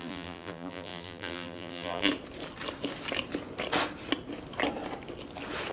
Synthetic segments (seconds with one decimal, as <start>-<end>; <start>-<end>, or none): 0.0-2.1